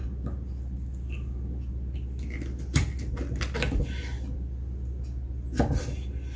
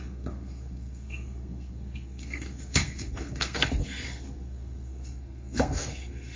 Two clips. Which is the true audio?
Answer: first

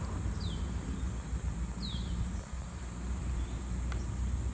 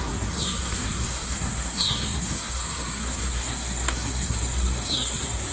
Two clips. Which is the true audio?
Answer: first